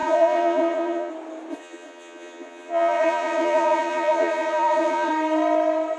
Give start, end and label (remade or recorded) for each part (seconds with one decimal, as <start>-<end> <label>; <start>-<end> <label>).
0.0-1.1 remade; 1.1-1.5 recorded; 1.5-5.1 remade; 5.1-6.0 recorded